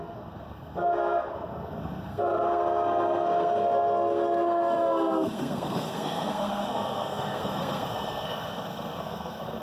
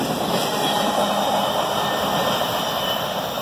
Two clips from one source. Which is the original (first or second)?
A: second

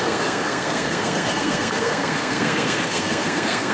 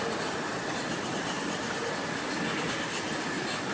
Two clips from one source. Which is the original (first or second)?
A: second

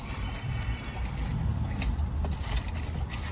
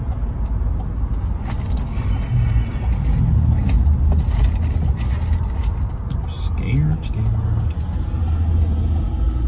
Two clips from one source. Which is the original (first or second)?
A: second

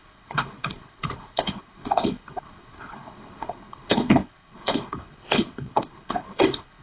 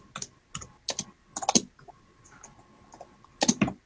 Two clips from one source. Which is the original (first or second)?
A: second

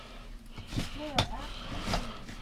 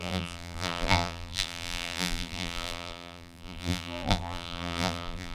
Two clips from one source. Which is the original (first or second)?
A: first